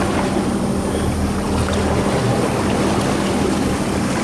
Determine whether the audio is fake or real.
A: real